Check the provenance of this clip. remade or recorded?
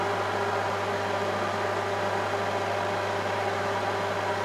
recorded